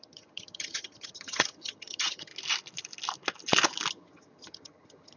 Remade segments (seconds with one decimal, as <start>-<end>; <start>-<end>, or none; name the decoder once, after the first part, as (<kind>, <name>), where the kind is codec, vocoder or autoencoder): 0.0-2.3 (vocoder, HiFi-GAN); 3.9-5.2